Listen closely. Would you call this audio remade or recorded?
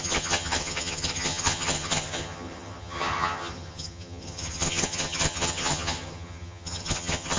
remade